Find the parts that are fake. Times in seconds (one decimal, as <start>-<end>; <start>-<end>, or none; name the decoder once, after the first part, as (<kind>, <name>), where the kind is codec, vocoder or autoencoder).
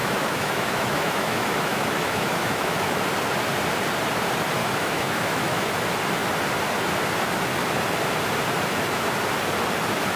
0.0-3.0 (autoencoder, DAC-VAE); 4.6-5.7